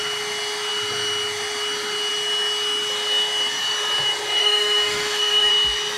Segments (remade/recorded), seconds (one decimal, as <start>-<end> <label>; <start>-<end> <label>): 0.0-4.4 recorded; 4.4-5.5 remade; 5.5-6.0 recorded